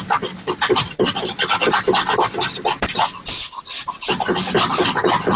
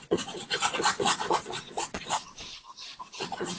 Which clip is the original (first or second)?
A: first